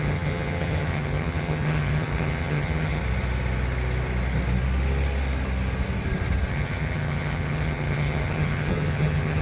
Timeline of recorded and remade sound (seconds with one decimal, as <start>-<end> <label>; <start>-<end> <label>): 0.0-3.0 remade; 3.0-6.5 recorded; 6.5-9.4 remade